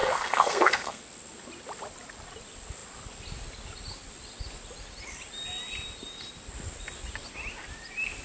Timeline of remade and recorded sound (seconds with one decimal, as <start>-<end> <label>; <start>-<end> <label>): 0.0-1.0 remade; 1.0-8.2 recorded